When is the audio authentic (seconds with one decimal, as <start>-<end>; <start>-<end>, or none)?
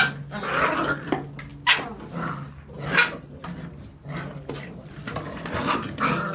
0.0-6.3